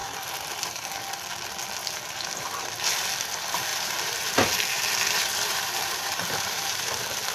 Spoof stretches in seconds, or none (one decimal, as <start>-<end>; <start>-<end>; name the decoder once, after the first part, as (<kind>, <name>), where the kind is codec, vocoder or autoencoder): 0.0-0.9 (vocoder, BigVGAN v2); 1.8-2.7; 3.7-7.3